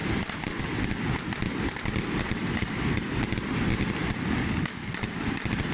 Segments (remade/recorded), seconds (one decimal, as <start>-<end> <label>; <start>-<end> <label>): 0.0-0.6 remade; 0.6-2.4 recorded; 2.4-3.0 remade; 3.0-5.7 recorded